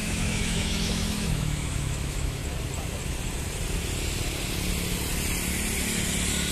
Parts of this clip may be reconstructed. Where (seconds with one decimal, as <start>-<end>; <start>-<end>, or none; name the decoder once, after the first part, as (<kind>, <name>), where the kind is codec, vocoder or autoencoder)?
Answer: 0.0-2.4 (autoencoder, DAC-VAE)